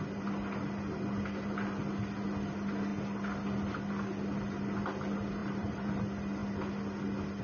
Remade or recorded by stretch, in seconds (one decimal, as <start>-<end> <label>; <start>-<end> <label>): 0.0-5.4 recorded; 5.4-6.0 remade; 6.0-7.4 recorded